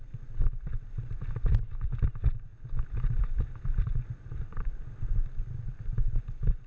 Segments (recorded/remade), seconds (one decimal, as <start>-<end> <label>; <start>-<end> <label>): 0.0-6.7 remade